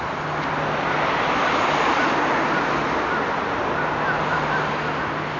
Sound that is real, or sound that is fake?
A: real